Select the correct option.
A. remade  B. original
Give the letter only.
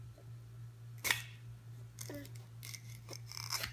B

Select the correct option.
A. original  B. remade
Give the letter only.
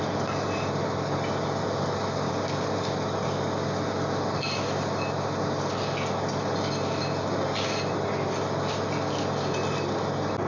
A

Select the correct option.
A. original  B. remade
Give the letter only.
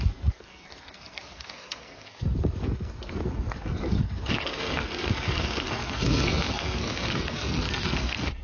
B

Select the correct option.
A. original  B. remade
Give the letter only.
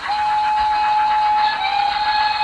A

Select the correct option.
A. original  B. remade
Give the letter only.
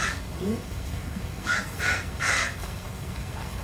B